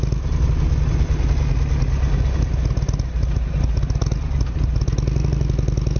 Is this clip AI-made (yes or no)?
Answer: no